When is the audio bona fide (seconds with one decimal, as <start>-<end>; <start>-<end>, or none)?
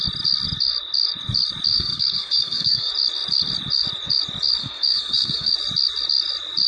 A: 0.0-1.7; 2.9-4.6; 5.5-6.7